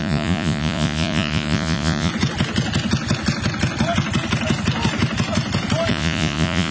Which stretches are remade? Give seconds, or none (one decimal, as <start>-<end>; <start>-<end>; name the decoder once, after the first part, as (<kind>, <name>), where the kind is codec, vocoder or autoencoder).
0.0-2.1 (vocoder, Vocos); 5.9-6.7